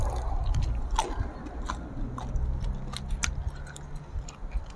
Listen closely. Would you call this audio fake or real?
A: real